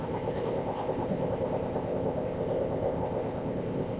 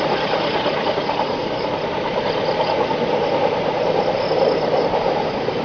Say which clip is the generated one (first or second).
first